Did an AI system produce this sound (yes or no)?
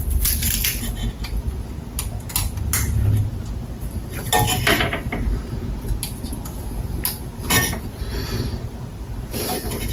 no